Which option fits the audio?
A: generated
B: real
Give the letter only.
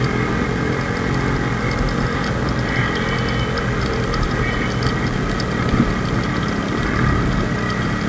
B